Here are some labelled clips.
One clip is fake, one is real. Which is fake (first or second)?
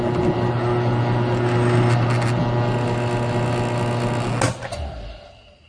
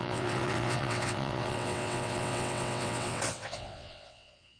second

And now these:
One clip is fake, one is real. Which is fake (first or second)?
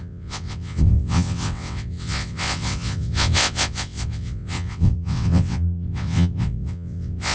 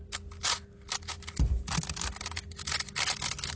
first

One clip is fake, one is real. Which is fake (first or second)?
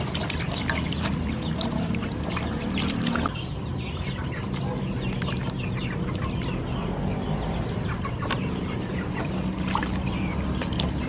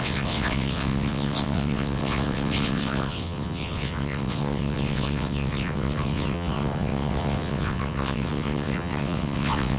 second